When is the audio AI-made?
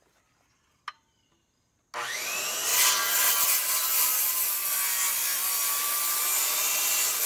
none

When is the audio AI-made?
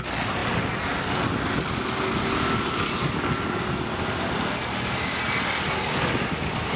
none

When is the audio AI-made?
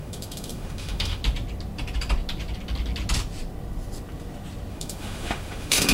0.0-1.2 (autoencoder, DAC-VAE); 4.7-5.9